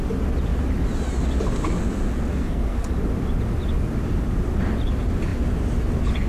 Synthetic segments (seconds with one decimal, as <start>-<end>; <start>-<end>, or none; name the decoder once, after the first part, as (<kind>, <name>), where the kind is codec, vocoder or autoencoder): 2.3-2.9 (codec, SNAC)